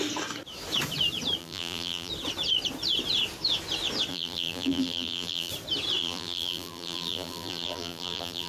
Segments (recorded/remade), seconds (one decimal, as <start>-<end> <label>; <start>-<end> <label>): 0.0-1.4 recorded; 1.4-2.1 remade; 2.1-4.1 recorded; 4.1-5.5 remade; 5.5-6.0 recorded; 6.0-8.5 remade